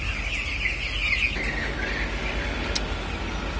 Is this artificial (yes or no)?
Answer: no